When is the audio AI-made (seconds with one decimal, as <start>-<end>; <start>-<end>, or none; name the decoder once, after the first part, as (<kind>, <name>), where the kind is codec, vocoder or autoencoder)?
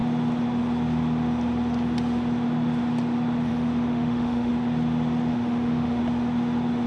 3.9-4.5 (autoencoder, DAC-VAE); 5.3-6.0